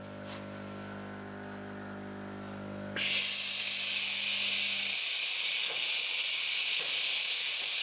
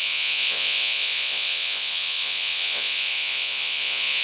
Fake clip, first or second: second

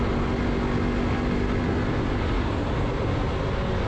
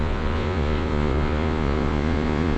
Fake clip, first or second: second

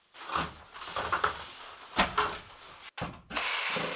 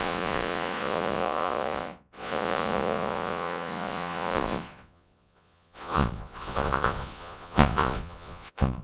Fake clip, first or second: second